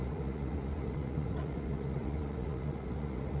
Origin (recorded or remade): remade